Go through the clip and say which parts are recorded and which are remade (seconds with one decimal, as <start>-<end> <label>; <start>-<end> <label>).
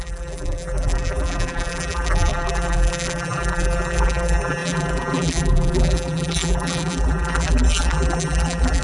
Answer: 0.0-8.8 remade